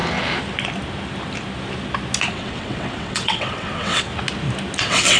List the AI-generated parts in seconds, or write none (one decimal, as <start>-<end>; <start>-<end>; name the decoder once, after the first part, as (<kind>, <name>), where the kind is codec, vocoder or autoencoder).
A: 2.3-4.1 (vocoder, WaveNeXt); 4.8-5.2

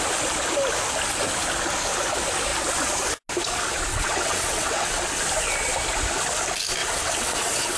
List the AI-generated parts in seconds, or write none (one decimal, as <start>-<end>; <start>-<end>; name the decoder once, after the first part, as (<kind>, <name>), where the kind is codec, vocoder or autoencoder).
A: 3.9-5.1 (vocoder, WaveNeXt); 6.8-7.8

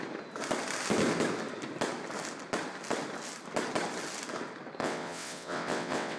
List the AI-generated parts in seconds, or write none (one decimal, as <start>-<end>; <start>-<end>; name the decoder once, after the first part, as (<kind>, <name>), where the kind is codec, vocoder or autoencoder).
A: 4.8-6.2 (vocoder, WaveNeXt)

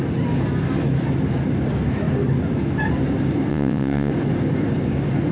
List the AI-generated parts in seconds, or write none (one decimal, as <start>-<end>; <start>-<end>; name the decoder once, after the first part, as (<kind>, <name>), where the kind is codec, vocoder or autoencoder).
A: 3.5-4.1 (vocoder, WaveNeXt)